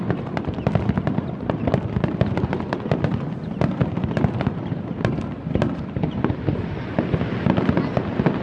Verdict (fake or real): real